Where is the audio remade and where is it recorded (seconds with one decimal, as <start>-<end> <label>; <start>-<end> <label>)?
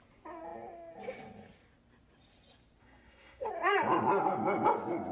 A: 0.0-2.8 recorded; 2.8-3.5 remade; 3.5-5.1 recorded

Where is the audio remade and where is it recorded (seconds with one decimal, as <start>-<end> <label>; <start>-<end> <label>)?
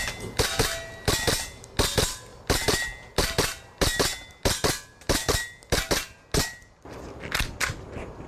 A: 0.0-8.3 recorded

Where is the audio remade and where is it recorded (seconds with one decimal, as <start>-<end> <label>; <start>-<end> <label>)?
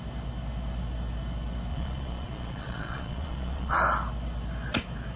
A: 0.0-1.7 recorded; 1.7-3.8 remade; 3.8-5.2 recorded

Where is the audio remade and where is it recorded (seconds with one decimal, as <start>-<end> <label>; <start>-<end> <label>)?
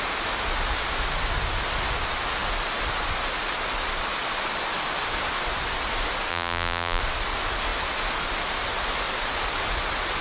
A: 0.0-6.3 recorded; 6.3-7.0 remade; 7.0-10.2 recorded